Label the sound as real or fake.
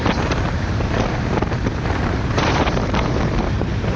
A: fake